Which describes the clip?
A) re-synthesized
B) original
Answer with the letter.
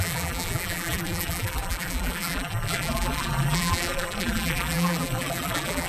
A